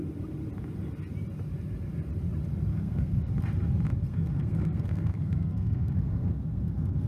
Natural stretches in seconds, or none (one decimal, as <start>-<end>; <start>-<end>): 0.0-2.7; 3.3-4.1